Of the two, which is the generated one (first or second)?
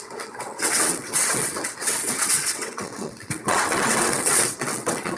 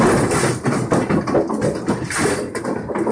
first